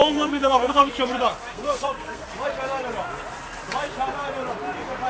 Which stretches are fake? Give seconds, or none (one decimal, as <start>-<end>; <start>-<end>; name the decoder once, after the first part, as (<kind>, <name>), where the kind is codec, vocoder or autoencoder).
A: 0.0-0.9 (codec, SNAC); 1.5-2.3